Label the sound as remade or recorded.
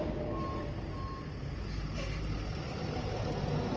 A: recorded